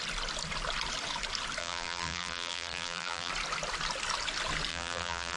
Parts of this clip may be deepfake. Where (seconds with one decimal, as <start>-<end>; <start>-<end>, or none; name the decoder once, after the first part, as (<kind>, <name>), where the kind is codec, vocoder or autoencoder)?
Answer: 1.6-3.3 (vocoder, BigVGAN v2); 4.7-5.4